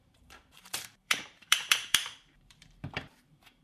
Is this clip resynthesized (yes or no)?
yes